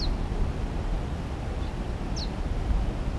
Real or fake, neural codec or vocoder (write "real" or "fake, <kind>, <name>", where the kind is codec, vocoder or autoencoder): real